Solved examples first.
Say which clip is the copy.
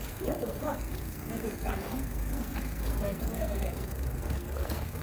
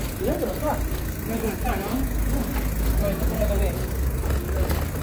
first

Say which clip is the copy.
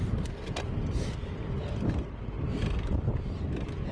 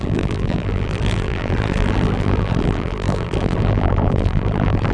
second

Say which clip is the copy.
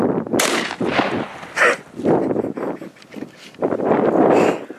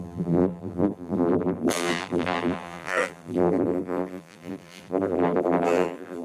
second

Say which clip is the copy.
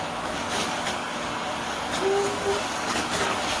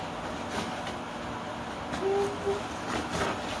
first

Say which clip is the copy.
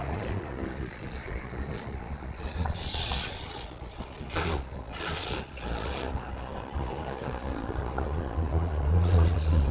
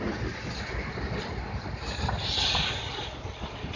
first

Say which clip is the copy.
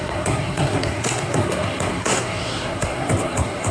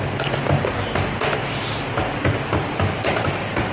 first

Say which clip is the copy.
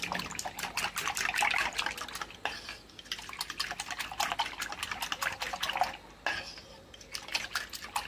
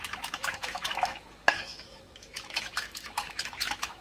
second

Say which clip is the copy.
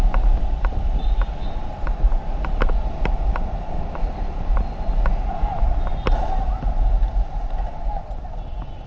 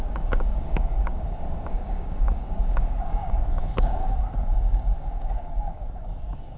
second